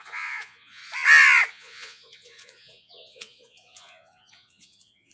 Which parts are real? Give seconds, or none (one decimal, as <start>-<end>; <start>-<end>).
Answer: 0.8-1.5